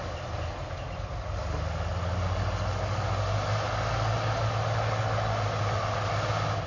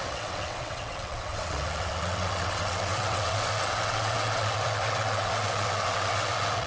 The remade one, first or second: second